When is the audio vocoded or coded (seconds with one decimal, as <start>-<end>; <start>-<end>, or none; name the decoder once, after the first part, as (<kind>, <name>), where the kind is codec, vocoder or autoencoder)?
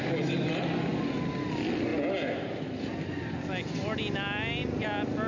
none